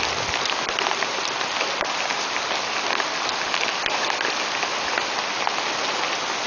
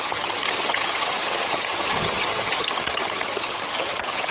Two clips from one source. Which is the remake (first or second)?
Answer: second